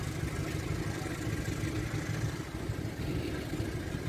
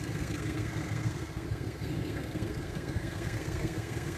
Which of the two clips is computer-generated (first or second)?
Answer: second